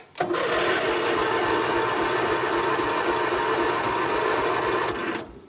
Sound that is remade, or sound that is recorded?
recorded